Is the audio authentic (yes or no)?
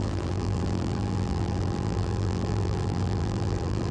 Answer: no